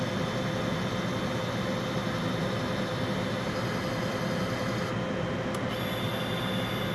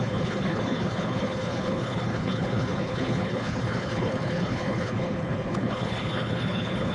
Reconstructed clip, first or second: second